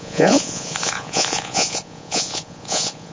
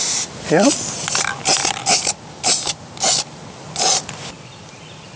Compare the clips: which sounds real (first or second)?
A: second